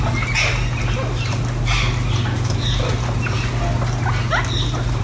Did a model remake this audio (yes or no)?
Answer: no